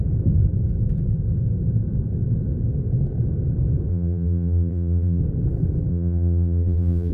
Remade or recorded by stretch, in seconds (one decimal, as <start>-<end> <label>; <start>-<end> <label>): 0.0-3.9 recorded; 3.9-5.2 remade; 5.2-5.9 recorded; 5.9-7.1 remade